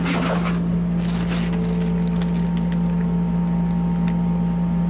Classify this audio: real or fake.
real